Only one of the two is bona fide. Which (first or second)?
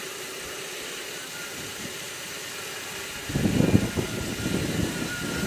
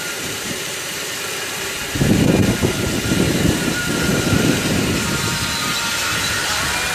first